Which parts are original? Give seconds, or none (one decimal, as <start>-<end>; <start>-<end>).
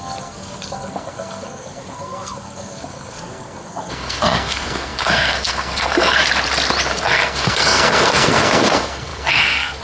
6.2-6.9